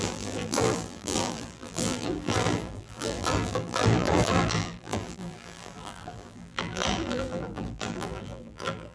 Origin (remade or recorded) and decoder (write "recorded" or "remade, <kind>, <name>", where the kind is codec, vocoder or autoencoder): remade, vocoder, BigVGAN v2